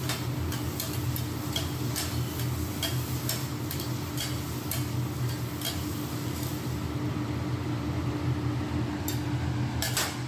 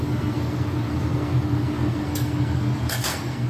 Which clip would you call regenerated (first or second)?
second